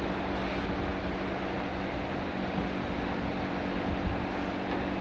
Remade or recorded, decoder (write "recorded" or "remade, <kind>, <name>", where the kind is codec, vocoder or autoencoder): recorded